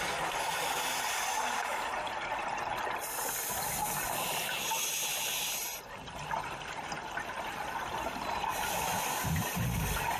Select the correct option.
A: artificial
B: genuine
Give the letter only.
B